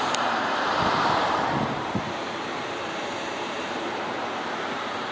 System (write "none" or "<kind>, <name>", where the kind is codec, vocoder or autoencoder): vocoder, BigVGAN v2